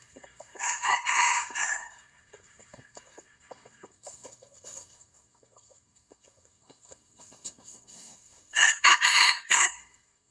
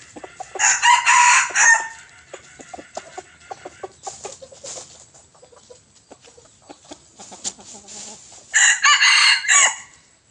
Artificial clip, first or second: first